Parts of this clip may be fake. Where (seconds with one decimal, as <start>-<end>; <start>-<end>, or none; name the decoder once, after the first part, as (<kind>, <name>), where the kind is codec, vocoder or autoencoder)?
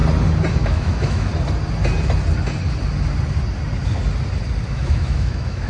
0.5-1.3 (autoencoder, DAC-VAE); 4.7-5.7